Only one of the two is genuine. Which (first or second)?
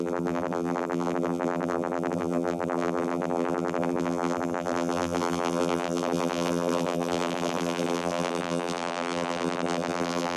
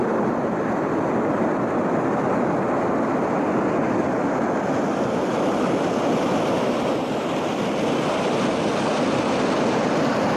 second